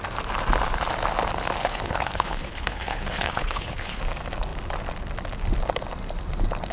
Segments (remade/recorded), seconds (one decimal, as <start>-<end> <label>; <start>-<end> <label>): 0.0-1.6 recorded; 1.6-4.0 remade; 4.0-6.7 recorded